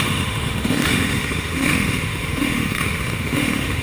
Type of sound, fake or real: fake